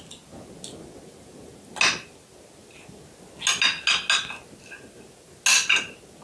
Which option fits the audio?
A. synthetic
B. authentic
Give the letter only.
B